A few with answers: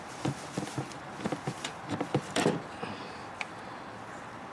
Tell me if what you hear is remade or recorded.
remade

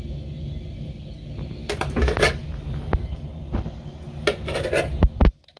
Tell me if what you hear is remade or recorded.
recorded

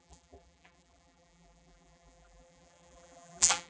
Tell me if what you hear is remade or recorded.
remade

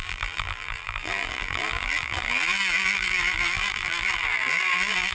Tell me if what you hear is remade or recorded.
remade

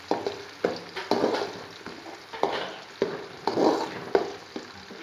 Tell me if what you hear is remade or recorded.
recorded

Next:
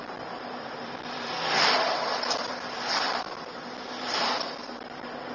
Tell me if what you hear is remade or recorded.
remade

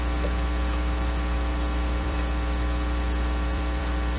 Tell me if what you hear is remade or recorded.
remade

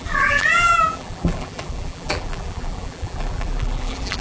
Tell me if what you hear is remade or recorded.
remade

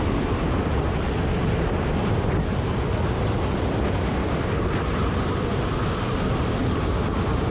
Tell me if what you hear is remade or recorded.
recorded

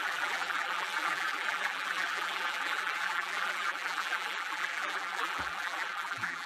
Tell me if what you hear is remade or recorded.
remade